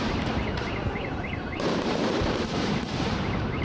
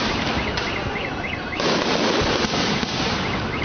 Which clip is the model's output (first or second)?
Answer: first